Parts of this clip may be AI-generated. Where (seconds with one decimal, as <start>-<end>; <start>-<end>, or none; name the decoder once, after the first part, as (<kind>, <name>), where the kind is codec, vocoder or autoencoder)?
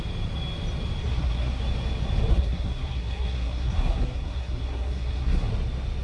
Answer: 1.0-1.6 (codec, SNAC); 2.3-5.5